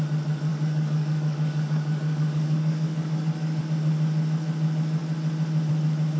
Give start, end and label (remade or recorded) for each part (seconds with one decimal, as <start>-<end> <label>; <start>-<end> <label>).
0.0-0.5 recorded; 0.5-3.6 remade; 3.6-6.2 recorded